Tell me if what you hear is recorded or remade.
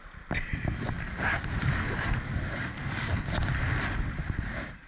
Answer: recorded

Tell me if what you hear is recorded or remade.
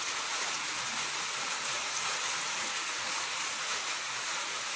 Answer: remade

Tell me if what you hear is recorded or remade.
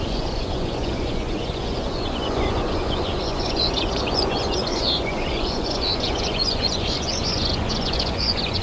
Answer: remade